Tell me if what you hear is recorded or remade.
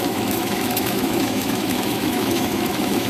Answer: remade